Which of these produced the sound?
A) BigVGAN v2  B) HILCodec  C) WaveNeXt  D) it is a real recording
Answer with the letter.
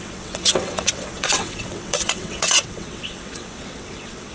C